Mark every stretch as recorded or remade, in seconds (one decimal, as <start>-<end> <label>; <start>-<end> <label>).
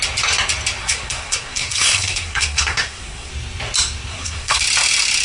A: 0.0-0.8 recorded; 0.8-3.3 remade; 3.3-4.1 recorded; 4.1-4.6 remade; 4.6-5.2 recorded